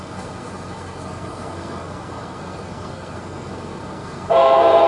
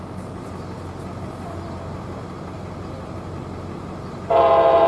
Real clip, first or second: second